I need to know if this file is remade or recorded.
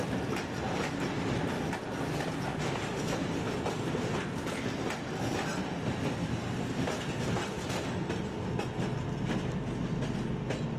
recorded